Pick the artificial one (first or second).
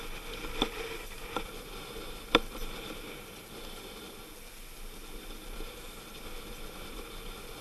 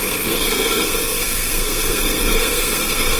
second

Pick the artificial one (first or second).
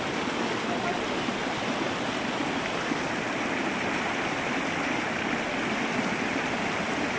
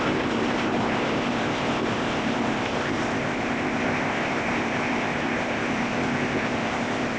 second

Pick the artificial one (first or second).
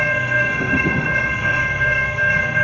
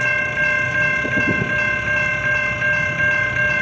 first